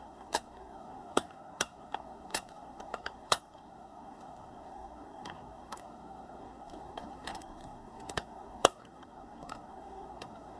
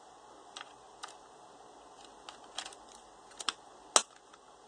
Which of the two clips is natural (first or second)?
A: second